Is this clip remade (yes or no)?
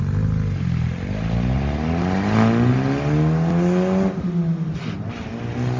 no